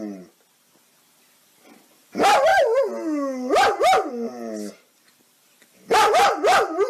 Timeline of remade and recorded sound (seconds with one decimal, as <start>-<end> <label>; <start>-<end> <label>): 0.0-6.9 recorded